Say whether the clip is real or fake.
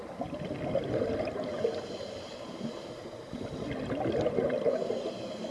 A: real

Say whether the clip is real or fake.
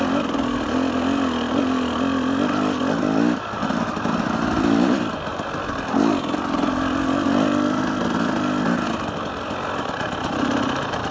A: real